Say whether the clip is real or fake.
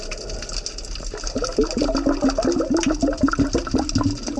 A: real